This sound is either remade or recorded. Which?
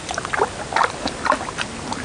recorded